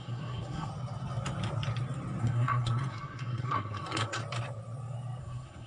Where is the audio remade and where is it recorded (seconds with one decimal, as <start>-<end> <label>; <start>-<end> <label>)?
0.0-0.7 remade; 0.7-2.2 recorded; 2.2-4.2 remade; 4.2-5.2 recorded; 5.2-5.7 remade